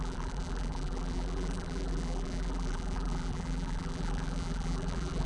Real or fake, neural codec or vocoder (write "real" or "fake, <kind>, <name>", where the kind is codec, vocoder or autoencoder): fake, vocoder, BigVGAN v2